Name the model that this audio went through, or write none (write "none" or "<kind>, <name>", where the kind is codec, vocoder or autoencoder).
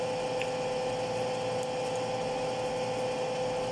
none